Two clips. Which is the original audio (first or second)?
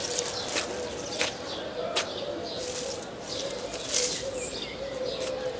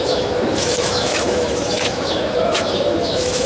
first